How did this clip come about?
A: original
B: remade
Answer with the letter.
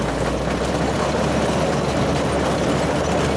A